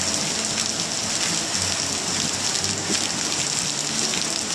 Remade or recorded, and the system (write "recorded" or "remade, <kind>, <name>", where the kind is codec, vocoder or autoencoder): recorded